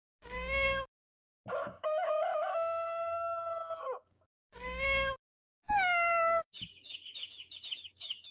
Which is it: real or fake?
fake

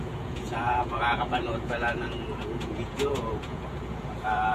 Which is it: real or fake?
fake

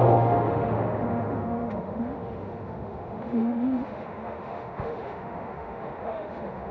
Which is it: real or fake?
fake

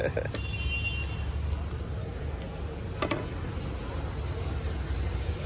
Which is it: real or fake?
real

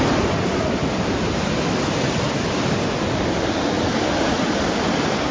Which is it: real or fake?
real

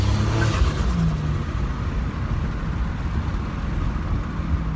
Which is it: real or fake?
real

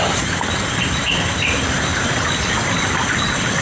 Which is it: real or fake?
real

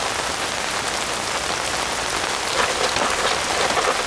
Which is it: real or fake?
real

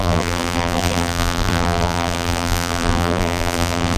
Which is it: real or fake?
fake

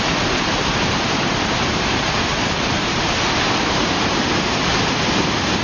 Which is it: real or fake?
fake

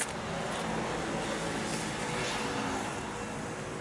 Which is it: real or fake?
real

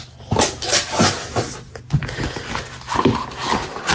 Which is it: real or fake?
real